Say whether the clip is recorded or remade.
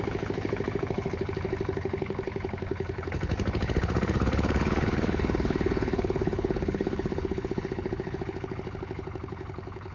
remade